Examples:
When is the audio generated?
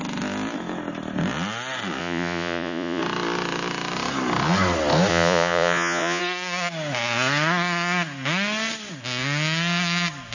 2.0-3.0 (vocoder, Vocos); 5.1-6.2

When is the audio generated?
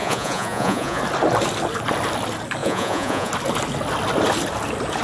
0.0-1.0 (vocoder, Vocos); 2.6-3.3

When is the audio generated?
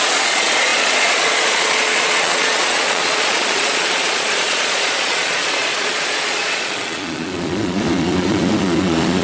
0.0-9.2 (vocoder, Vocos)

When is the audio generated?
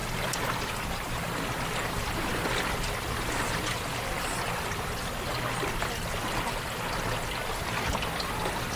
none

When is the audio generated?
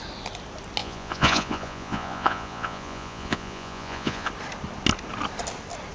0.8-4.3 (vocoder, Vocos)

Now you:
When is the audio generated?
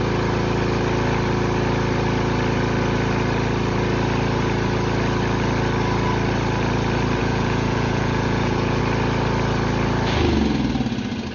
7.2-8.8 (vocoder, Vocos)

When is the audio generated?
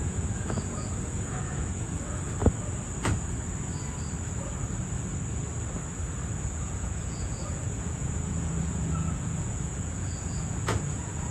0.0-2.4 (vocoder, Vocos); 6.4-11.3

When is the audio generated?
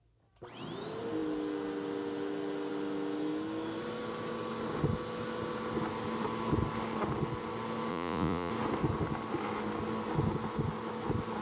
7.9-8.5 (vocoder, Vocos)